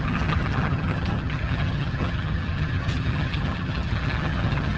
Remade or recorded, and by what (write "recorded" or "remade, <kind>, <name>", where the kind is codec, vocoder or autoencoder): remade, vocoder, HiFi-GAN